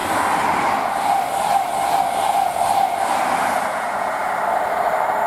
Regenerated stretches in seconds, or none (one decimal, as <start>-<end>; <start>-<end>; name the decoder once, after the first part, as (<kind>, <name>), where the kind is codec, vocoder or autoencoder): 3.7-4.2 (vocoder, Vocos)